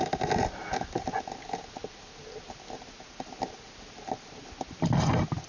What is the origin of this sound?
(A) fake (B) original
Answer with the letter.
B